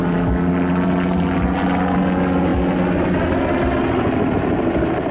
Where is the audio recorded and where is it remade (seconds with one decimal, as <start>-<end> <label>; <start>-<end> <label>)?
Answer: 0.0-5.1 recorded